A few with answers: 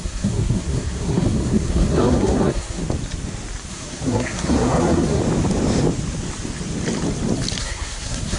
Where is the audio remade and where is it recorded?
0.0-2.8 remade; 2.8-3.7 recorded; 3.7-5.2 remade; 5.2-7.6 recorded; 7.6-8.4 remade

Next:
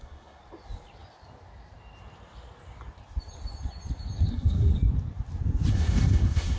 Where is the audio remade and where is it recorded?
0.0-0.4 remade; 0.4-4.3 recorded; 4.3-4.7 remade; 4.7-5.7 recorded; 5.7-6.6 remade

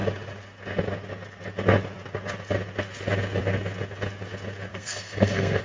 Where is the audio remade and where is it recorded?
0.0-4.7 recorded; 4.7-5.6 remade

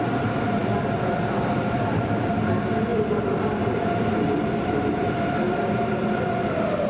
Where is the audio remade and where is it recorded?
0.0-6.9 recorded

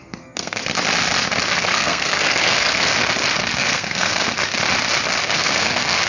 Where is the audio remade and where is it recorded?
0.0-0.6 remade; 0.6-1.5 recorded; 1.5-2.9 remade; 2.9-3.6 recorded; 3.6-4.4 remade; 4.4-5.2 recorded; 5.2-6.1 remade

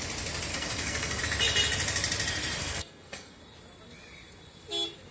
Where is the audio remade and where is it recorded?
0.0-0.5 recorded; 0.5-1.2 remade; 1.2-2.6 recorded; 2.6-3.4 remade; 3.4-5.1 recorded